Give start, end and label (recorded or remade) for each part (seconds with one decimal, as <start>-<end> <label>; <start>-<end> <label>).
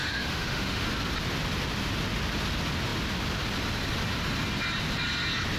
0.0-0.8 remade; 0.8-5.6 recorded